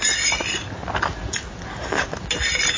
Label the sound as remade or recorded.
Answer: recorded